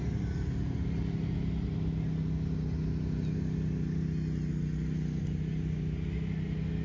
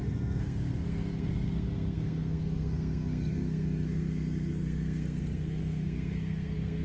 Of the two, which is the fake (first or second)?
second